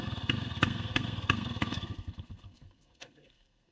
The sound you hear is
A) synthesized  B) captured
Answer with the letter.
A